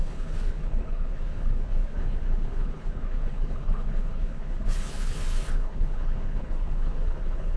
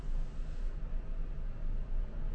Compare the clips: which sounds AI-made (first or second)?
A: first